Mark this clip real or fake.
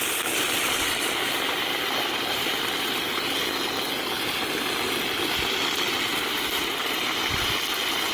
real